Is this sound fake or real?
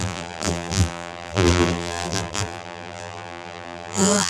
fake